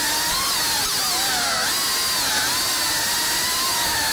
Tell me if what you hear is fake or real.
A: real